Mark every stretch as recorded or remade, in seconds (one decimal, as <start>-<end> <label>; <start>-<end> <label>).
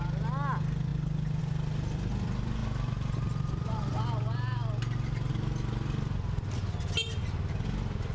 0.0-8.1 recorded